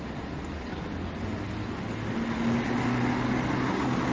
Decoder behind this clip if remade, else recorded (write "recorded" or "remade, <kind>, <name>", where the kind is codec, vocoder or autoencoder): recorded